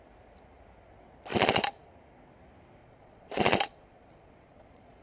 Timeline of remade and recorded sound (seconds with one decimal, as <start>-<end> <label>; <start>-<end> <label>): 0.0-1.3 recorded; 1.3-1.9 remade; 1.9-2.8 recorded; 2.8-5.0 remade